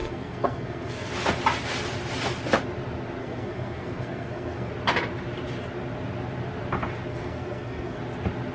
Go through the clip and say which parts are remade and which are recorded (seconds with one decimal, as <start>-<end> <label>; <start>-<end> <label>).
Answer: 0.0-1.1 remade; 1.1-3.2 recorded; 3.2-4.7 remade; 4.7-7.1 recorded; 7.1-8.0 remade; 8.0-8.5 recorded